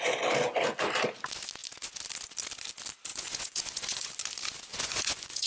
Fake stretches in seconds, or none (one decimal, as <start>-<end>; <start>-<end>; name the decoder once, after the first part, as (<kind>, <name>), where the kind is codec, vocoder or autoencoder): 3.1-4.1 (vocoder, Vocos); 4.7-5.5